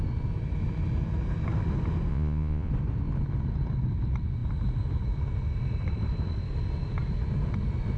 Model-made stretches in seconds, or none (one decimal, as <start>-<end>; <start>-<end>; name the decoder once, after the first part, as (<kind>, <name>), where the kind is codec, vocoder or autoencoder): 2.1-2.7 (vocoder, Vocos)